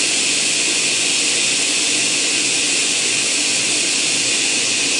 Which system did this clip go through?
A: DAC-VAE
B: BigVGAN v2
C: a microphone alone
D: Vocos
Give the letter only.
D